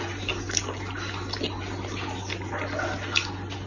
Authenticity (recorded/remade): recorded